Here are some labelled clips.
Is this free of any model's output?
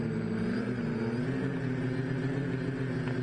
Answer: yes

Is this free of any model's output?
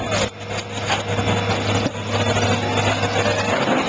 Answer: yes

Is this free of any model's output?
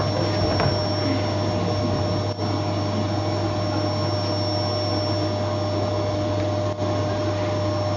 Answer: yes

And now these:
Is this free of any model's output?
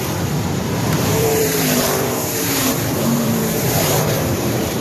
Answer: no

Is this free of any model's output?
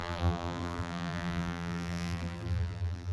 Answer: no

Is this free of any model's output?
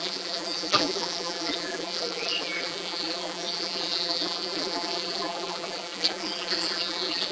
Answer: no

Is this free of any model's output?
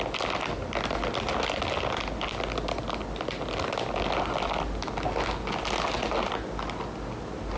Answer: yes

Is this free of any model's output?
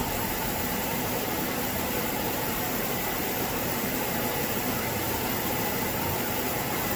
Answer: no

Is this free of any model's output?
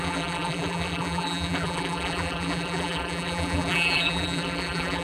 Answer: no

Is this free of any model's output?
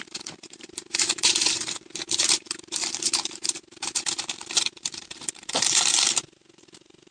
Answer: no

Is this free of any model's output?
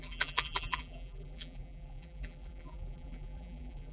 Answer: no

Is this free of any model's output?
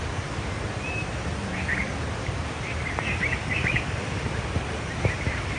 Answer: no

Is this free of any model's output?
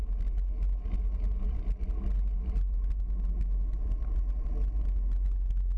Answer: yes